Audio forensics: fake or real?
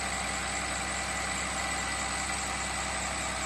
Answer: real